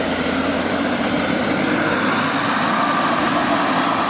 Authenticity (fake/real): fake